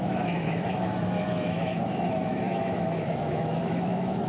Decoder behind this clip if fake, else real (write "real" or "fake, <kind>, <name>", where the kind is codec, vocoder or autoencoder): fake, autoencoder, DAC-VAE